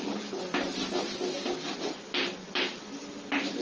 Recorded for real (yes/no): yes